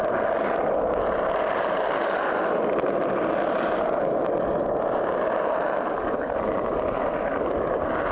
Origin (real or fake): real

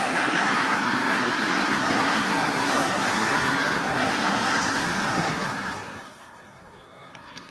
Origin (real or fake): fake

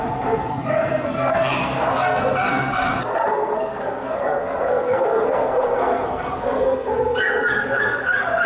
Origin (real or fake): fake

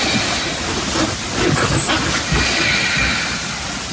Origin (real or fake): real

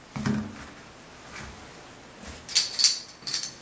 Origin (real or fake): real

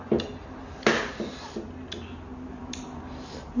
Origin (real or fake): real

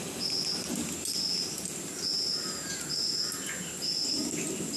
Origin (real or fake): real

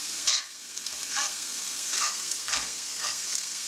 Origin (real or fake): fake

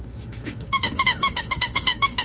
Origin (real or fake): fake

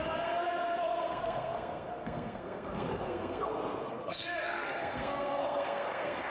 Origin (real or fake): fake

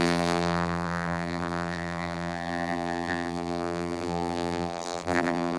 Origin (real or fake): fake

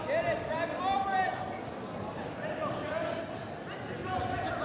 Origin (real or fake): real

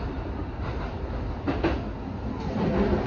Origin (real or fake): real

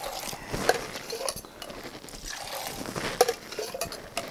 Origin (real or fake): real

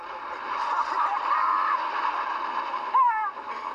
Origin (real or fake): fake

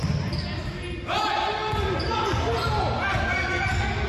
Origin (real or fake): real